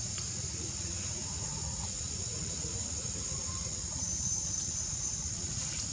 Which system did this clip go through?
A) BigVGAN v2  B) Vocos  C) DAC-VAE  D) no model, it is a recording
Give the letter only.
B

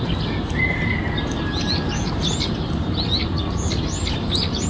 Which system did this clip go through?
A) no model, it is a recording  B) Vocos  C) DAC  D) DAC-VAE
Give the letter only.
A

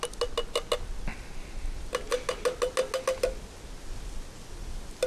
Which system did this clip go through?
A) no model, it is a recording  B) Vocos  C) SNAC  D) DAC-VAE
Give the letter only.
A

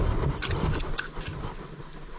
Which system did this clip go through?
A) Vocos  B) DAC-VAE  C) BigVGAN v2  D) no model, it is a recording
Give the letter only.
D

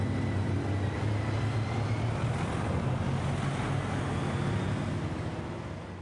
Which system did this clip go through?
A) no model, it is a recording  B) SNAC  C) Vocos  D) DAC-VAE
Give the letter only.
A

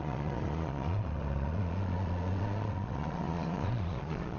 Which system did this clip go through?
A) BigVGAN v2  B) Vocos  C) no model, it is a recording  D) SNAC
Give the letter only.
B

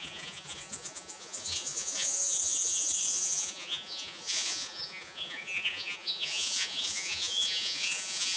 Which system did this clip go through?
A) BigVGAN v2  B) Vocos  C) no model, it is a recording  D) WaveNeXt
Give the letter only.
B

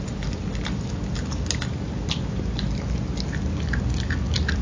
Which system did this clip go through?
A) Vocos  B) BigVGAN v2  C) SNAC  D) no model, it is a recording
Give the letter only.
D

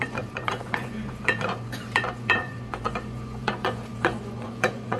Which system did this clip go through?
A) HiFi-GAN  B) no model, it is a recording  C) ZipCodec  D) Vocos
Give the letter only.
D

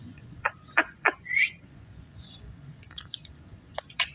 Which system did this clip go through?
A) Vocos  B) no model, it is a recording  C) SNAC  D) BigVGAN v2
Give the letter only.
A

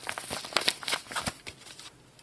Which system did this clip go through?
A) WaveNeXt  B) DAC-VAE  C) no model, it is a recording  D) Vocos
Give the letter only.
C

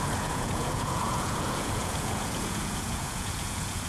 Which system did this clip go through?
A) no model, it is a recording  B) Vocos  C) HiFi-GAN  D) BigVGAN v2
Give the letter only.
B